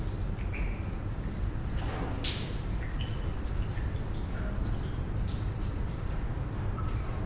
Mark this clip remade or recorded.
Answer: recorded